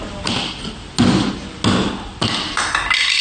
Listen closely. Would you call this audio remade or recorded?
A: recorded